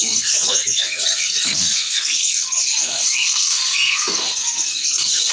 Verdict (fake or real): fake